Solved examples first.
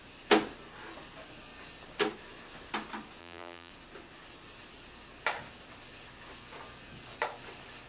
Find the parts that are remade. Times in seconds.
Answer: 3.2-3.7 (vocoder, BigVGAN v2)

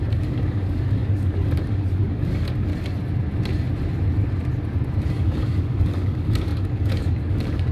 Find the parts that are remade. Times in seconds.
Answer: 0.0-2.7 (codec, DAC); 5.1-7.7

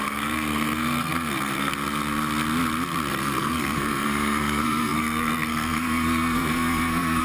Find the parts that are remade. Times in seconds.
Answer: 0.0-1.7 (codec, SNAC); 3.1-7.2

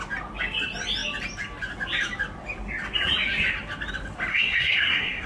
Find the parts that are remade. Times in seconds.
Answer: 4.3-5.3 (codec, SNAC)

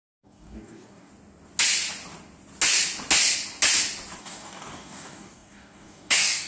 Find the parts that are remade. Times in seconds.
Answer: 0.0-1.1 (codec, DAC); 4.2-6.5